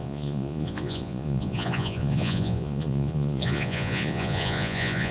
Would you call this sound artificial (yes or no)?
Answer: yes